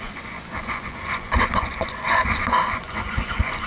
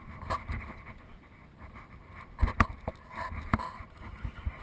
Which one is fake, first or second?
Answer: first